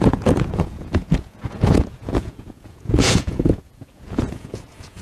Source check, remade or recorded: remade